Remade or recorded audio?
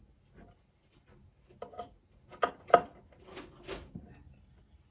recorded